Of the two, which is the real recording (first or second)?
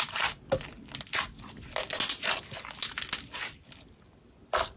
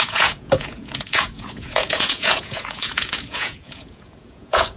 first